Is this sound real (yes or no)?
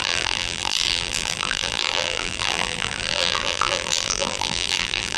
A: no